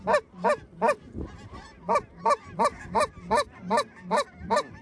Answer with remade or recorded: remade